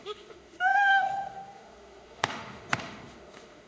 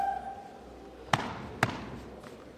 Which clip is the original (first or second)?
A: second